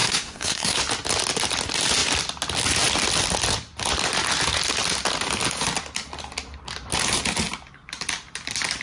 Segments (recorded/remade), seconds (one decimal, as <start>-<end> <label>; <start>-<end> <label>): 0.0-0.8 remade; 0.8-8.8 recorded